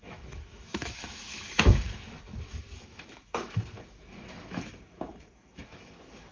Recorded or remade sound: remade